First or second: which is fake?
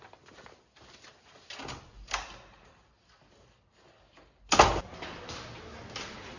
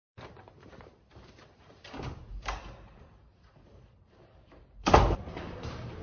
second